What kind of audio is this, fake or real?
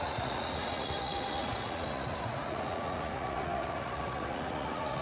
fake